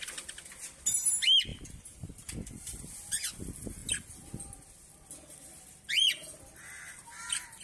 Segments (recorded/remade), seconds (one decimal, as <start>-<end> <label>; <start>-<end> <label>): 0.0-1.5 recorded; 1.5-2.5 remade; 2.5-7.6 recorded